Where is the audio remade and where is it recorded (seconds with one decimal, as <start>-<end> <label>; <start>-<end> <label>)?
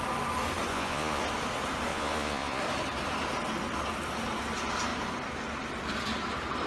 0.0-0.7 recorded; 0.7-1.2 remade; 1.2-1.9 recorded; 1.9-2.6 remade; 2.6-6.7 recorded